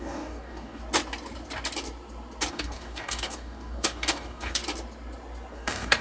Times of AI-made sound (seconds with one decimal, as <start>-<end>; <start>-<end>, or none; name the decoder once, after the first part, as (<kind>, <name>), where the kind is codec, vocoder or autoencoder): 0.0-0.8 (codec, DAC); 2.5-4.6; 5.5-6.0